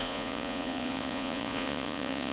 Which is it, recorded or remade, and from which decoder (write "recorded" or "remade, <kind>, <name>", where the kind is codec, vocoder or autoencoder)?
remade, vocoder, Vocos